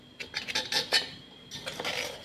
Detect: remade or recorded recorded